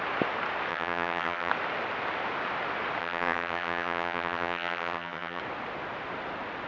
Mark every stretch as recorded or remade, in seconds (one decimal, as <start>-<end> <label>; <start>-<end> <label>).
0.0-0.7 recorded; 0.7-1.5 remade; 1.5-3.0 recorded; 3.0-5.4 remade; 5.4-6.7 recorded